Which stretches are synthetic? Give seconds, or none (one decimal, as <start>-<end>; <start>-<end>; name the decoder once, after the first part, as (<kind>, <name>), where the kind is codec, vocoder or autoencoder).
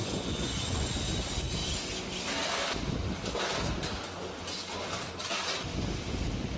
0.0-1.0 (vocoder, Vocos)